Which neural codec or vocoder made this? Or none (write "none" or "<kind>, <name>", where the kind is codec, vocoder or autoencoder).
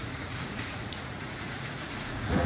vocoder, Vocos